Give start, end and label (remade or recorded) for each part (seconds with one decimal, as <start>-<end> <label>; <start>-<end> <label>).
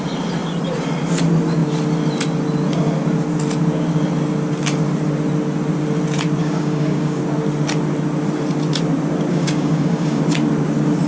0.0-6.4 recorded; 6.4-7.2 remade; 7.2-9.3 recorded; 9.3-10.2 remade; 10.2-11.1 recorded